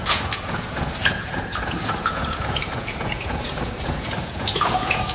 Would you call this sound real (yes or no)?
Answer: no